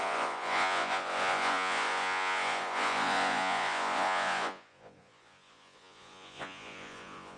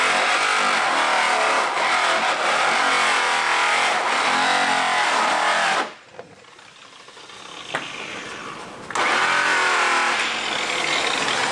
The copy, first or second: first